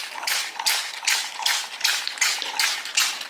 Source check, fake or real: real